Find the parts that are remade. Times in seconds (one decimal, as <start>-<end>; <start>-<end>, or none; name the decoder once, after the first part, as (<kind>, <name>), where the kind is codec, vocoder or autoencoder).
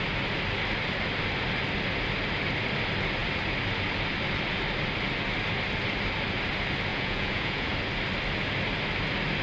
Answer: 6.9-7.7 (vocoder, Vocos)